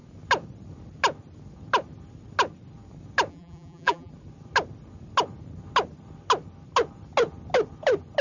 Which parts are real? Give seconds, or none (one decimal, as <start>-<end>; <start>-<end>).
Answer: 0.0-3.3; 4.1-8.2